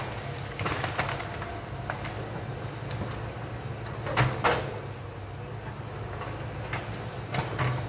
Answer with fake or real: real